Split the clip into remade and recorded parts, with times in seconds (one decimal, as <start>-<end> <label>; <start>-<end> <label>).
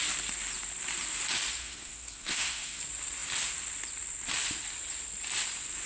0.0-1.6 recorded; 1.6-2.8 remade; 2.8-5.9 recorded